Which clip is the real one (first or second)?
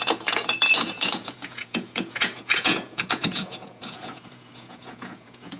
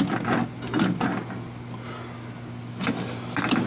second